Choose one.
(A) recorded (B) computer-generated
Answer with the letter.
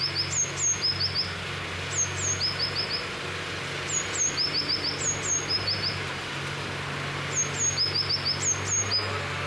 A